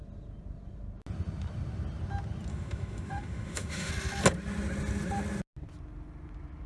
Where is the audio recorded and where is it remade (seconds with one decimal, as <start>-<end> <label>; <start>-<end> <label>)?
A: 0.0-2.5 recorded; 2.5-3.9 remade; 3.9-6.7 recorded